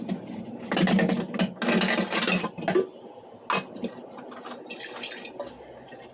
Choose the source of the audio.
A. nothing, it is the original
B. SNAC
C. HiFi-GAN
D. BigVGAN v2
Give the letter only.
A